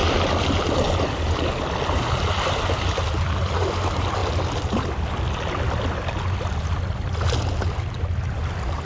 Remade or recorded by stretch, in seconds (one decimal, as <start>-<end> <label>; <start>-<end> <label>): 0.0-8.9 recorded